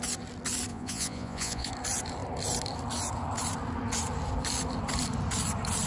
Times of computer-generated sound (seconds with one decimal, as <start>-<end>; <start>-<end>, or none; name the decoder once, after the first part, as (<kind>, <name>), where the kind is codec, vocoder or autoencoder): 0.7-1.7 (vocoder, Vocos)